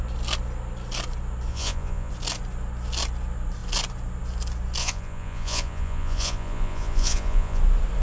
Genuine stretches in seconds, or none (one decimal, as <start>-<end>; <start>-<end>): 0.0-1.5; 2.1-4.8; 7.6-8.0